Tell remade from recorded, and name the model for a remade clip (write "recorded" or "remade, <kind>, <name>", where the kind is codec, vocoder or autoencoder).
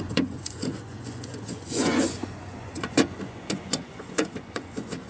remade, vocoder, Vocos